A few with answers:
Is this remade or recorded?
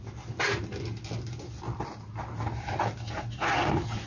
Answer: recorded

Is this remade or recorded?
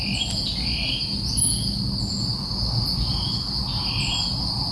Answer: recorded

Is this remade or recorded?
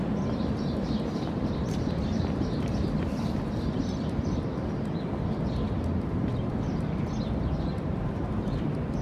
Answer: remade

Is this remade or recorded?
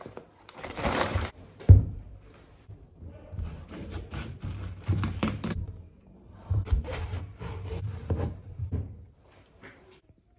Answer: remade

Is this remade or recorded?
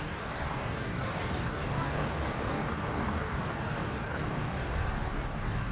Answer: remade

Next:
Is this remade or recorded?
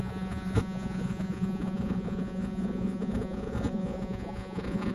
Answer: remade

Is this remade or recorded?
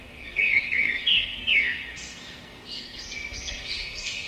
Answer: remade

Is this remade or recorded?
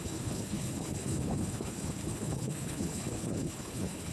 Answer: remade